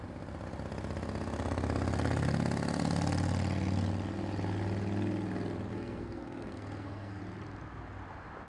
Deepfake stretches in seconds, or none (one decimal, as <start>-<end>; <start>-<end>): 5.7-7.2